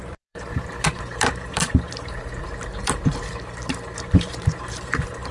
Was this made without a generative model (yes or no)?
no